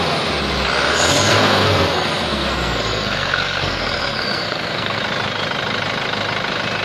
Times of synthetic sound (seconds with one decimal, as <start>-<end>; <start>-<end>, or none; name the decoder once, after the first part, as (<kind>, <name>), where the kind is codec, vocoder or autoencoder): 0.9-5.0 (codec, SNAC)